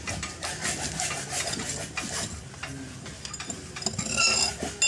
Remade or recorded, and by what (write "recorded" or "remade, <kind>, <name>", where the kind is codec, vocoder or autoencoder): recorded